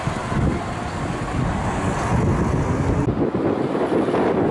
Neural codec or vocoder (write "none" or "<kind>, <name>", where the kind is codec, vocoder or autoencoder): none